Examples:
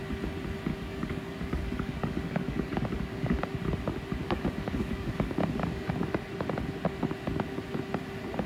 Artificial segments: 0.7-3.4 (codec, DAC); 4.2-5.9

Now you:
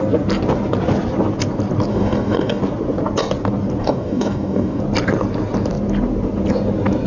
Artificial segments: 1.9-2.6 (codec, DAC); 3.8-4.8

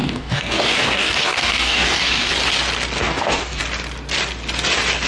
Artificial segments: 0.0-2.3 (codec, DAC); 3.0-3.6

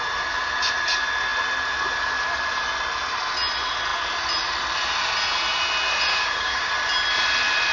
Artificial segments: 6.1-6.7 (codec, DAC)